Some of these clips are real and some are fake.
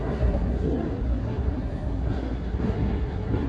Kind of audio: fake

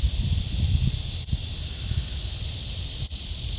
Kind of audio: real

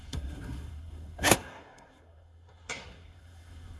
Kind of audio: fake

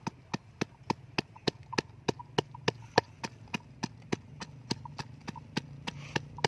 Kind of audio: real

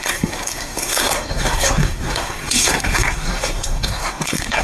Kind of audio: fake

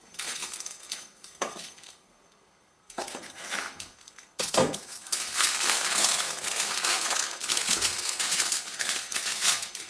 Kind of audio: fake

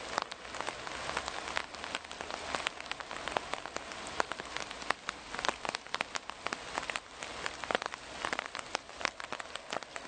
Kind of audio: real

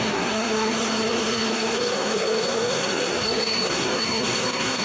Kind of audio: fake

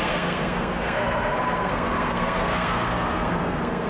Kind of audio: fake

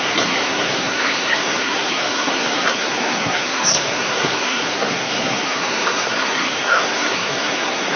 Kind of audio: fake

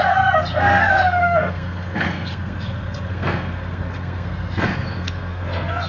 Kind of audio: fake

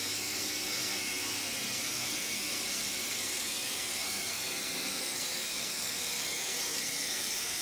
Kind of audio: fake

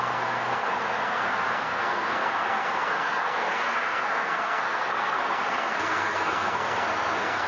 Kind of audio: fake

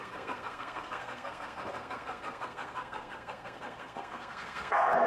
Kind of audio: fake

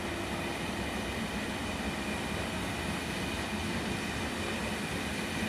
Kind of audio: real